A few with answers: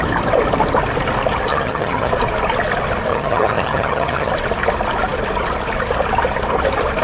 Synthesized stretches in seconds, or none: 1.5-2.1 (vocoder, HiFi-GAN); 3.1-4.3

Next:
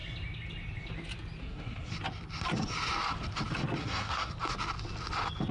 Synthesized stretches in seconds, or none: 1.4-1.9 (codec, SNAC); 3.8-4.3